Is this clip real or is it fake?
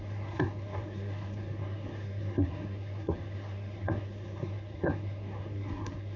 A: fake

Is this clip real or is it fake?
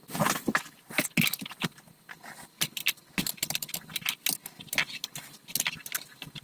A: real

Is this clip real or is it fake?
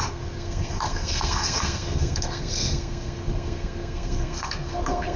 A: fake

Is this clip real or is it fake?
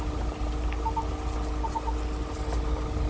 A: real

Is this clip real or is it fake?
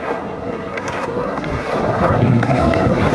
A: fake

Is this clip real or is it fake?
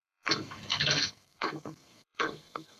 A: fake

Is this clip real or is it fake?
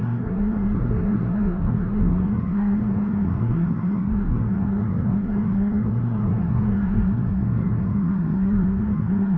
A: fake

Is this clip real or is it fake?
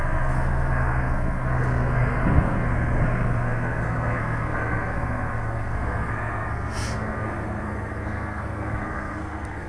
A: fake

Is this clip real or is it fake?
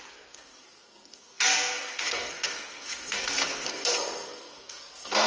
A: fake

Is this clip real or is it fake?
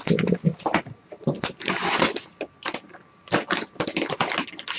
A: real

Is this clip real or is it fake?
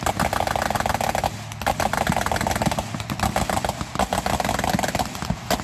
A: real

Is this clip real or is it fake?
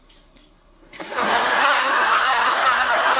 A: fake